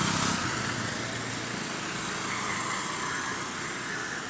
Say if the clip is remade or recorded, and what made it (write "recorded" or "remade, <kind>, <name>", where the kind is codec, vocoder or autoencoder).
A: recorded